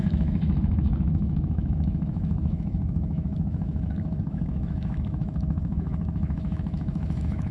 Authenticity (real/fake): fake